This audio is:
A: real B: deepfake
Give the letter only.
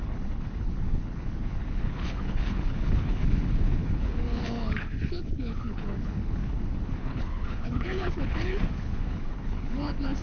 B